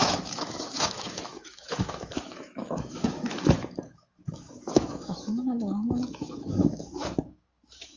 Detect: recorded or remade remade